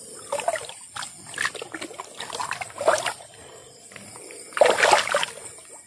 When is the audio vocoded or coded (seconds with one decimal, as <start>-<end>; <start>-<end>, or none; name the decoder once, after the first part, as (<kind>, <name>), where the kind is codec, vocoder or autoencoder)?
none